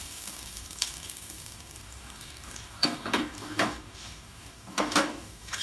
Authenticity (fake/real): fake